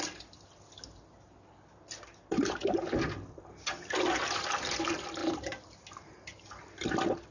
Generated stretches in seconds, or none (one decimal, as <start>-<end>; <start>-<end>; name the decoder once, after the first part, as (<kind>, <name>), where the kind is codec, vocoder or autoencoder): 5.2-6.0 (vocoder, BigVGAN v2)

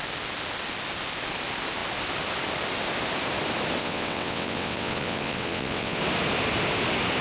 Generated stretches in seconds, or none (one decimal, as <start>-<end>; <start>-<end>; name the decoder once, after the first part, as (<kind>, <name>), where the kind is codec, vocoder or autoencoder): 3.8-6.0 (vocoder, WaveNeXt)

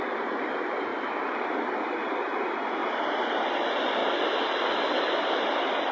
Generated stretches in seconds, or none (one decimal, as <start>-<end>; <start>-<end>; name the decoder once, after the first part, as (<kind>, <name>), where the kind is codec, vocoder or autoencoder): 0.9-2.1 (vocoder, BigVGAN v2); 4.0-4.8

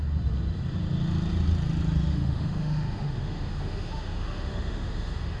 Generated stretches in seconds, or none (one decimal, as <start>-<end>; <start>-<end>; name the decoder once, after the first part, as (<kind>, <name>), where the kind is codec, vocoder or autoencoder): 2.1-5.4 (autoencoder, DAC-VAE)